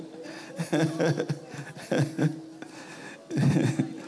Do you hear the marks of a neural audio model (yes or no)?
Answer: no